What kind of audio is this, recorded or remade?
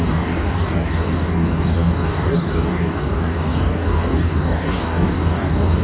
remade